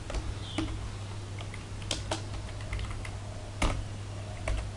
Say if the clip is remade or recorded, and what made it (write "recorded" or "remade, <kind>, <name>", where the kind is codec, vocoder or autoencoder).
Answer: recorded